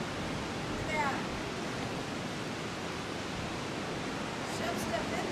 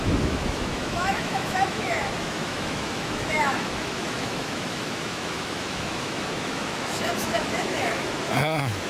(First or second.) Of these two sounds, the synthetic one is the second